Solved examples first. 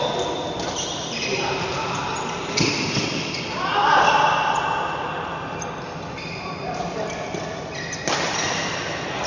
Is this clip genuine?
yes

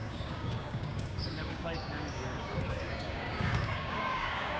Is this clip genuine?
no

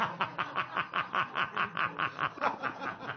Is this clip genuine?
yes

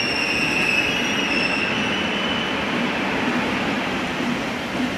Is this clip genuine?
yes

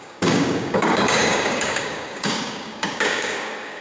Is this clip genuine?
no